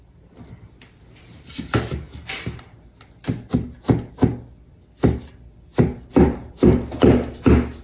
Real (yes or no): yes